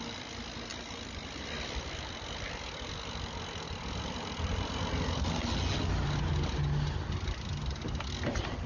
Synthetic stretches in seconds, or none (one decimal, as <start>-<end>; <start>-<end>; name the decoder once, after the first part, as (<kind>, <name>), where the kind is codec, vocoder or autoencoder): none